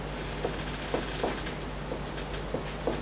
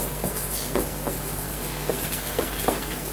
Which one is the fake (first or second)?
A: second